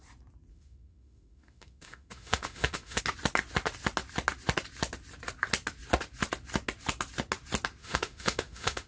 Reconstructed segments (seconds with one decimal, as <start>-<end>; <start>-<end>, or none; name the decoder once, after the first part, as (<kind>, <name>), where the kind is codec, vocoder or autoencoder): 0.5-3.0 (autoencoder, DAC-VAE); 7.8-8.9